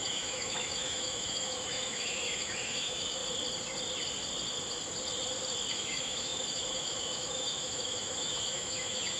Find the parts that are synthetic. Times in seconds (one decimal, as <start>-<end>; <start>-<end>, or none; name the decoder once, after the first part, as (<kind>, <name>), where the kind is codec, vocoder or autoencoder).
0.0-3.2 (autoencoder, DAC-VAE); 5.7-9.2